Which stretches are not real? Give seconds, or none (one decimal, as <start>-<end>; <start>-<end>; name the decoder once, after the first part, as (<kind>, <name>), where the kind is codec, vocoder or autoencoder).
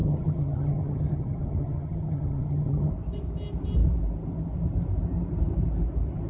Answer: 0.0-2.9 (vocoder, HiFi-GAN)